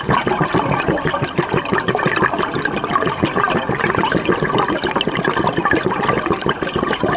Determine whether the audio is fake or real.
real